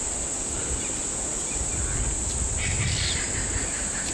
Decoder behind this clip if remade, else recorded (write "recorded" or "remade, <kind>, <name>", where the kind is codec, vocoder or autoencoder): recorded